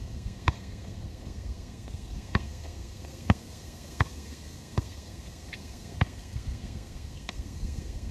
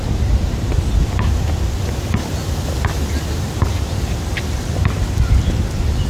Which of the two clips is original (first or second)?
second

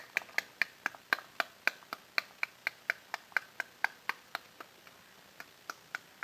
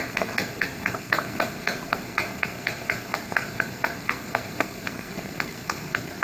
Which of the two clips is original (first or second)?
first